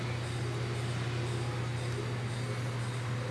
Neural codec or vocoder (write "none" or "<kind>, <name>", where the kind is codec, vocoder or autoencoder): none